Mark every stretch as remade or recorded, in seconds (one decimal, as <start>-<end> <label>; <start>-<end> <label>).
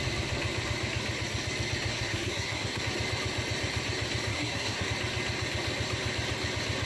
0.0-1.9 recorded; 1.9-2.8 remade; 2.8-4.3 recorded; 4.3-4.9 remade; 4.9-6.9 recorded